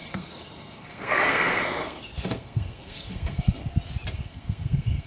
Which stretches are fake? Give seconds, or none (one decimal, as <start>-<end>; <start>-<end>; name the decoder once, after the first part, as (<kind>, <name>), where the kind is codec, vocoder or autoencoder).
0.0-3.6 (codec, SNAC); 4.1-5.1